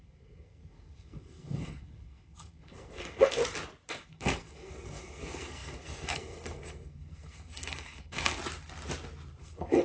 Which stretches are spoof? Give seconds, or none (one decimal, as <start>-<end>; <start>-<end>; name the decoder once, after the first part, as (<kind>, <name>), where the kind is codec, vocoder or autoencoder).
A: 0.0-3.4 (codec, SNAC); 3.9-8.4; 9.4-9.8